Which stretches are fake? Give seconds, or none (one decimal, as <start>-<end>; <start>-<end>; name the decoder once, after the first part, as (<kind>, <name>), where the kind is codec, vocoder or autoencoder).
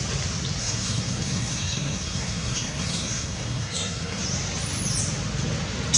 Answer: 0.6-4.2 (codec, SNAC)